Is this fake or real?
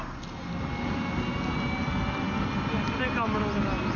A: real